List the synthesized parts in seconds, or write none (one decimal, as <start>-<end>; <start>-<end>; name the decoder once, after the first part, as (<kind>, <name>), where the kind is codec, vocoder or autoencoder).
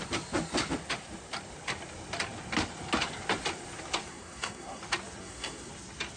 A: 4.1-4.8 (codec, SNAC); 5.2-5.7